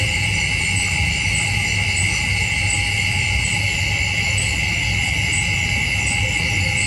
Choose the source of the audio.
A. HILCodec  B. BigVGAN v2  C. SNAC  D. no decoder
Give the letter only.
B